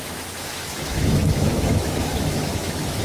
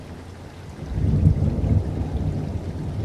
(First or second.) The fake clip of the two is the first